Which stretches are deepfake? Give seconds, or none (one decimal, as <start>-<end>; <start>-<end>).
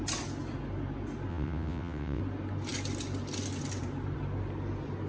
1.3-2.2